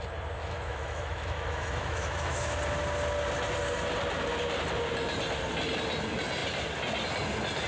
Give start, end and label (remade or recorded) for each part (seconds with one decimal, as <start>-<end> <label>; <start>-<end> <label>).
0.0-0.4 recorded; 0.4-2.6 remade; 2.6-7.7 recorded